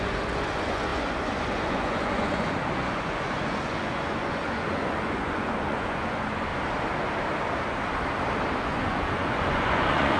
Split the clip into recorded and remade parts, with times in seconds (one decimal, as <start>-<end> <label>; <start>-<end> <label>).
0.0-6.5 remade; 6.5-8.6 recorded; 8.6-10.2 remade